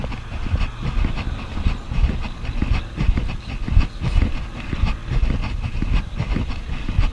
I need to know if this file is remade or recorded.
recorded